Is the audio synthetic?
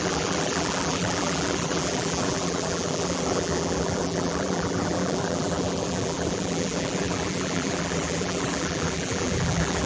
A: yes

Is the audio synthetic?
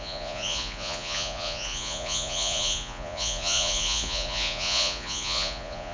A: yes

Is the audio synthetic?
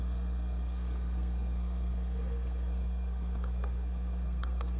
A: yes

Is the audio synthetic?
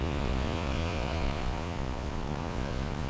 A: yes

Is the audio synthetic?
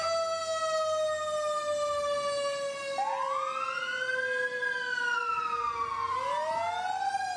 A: no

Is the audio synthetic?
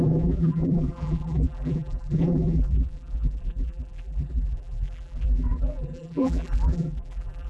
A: yes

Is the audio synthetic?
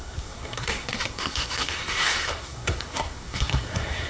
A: yes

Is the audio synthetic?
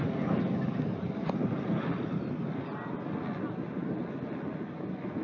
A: no